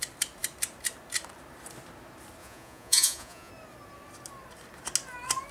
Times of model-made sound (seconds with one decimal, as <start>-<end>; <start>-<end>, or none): 2.4-3.5